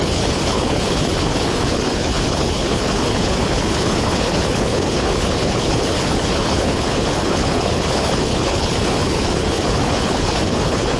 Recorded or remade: remade